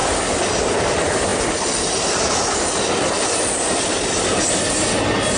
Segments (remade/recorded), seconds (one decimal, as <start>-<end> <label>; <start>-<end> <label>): 0.0-1.3 recorded; 1.3-4.5 remade; 4.5-5.4 recorded

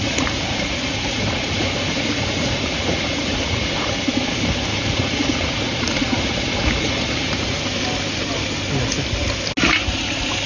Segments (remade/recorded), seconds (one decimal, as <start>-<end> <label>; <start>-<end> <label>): 0.0-3.9 remade; 3.9-4.7 recorded; 4.7-7.6 remade; 7.6-10.5 recorded

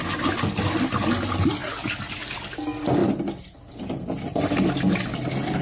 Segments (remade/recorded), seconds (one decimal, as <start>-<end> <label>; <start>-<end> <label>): 0.0-5.6 recorded

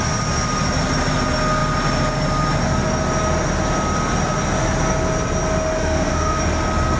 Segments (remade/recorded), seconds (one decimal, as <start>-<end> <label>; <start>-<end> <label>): 0.0-5.8 recorded; 5.8-6.4 remade; 6.4-7.0 recorded

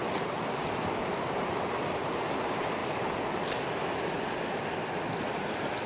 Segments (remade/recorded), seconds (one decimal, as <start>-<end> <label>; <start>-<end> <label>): 0.0-5.9 recorded